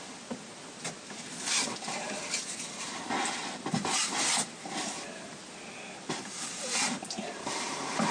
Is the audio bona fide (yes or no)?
yes